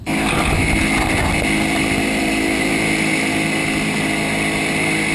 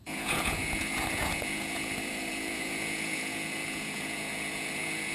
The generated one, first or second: second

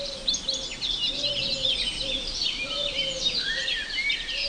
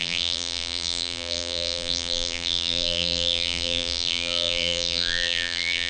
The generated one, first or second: second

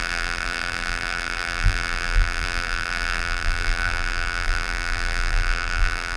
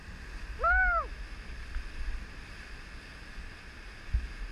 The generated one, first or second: first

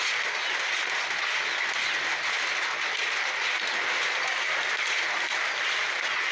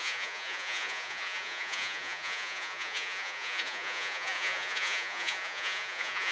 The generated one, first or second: second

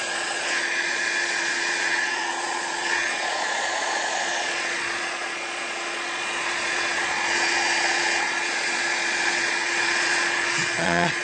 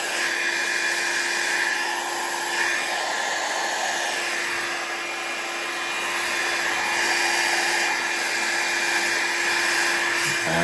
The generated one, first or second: first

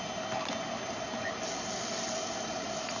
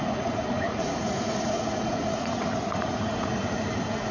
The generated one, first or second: second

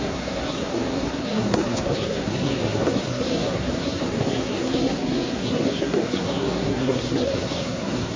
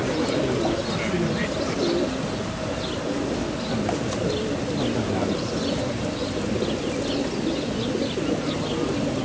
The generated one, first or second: first